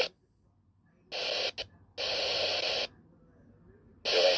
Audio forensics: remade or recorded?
recorded